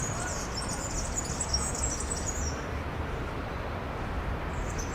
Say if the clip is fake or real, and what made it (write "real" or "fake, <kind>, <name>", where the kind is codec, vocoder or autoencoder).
real